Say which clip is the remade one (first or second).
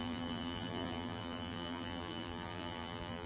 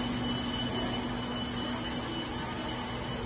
first